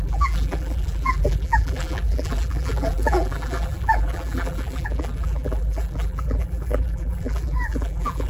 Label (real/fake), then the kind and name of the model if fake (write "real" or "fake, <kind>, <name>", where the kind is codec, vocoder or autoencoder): fake, vocoder, BigVGAN v2